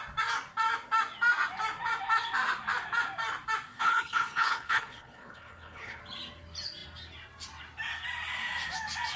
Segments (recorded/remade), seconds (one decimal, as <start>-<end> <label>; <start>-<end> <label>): 0.0-3.7 recorded; 3.7-6.0 remade; 6.0-9.2 recorded